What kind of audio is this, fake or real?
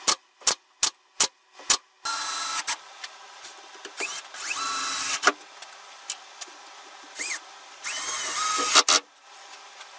real